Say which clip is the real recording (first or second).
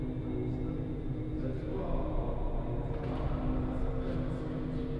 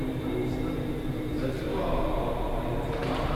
first